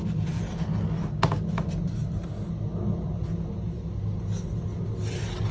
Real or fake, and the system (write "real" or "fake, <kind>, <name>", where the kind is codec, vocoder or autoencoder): real